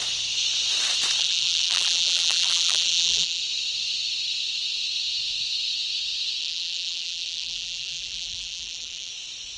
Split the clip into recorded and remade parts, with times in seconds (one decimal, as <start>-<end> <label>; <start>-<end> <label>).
0.0-1.2 recorded; 1.2-3.4 remade; 3.4-6.4 recorded; 6.4-9.1 remade; 9.1-9.6 recorded